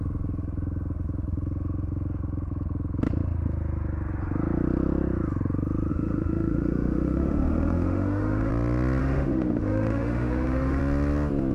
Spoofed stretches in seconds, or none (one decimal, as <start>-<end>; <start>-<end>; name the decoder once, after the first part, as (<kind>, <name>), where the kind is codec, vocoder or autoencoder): 5.9-8.5 (autoencoder, DAC-VAE); 9.0-10.8